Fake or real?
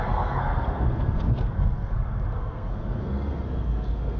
fake